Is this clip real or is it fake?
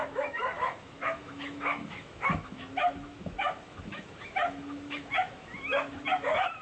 fake